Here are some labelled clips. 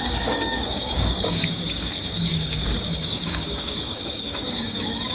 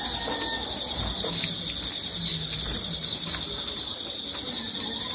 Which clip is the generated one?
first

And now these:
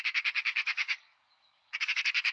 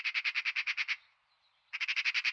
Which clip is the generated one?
first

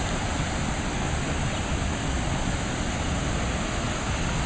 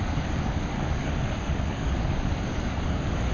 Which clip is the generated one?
second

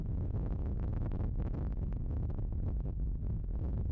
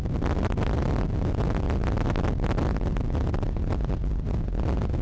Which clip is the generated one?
first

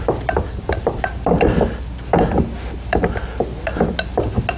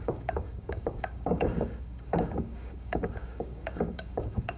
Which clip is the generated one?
second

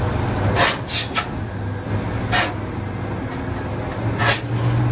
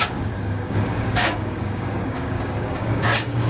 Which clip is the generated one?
second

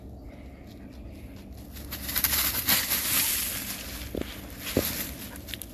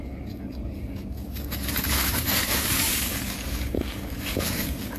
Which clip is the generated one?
second